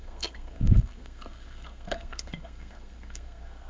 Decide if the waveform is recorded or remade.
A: remade